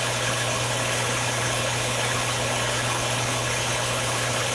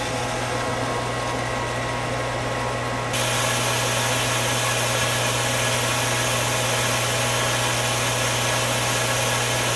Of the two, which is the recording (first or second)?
second